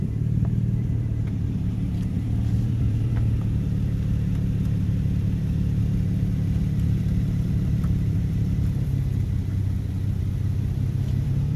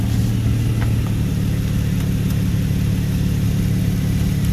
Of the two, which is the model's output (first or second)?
first